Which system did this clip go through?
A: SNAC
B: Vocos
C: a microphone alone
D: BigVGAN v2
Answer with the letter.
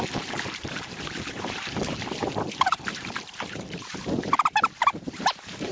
D